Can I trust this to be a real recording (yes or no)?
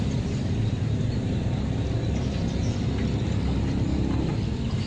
yes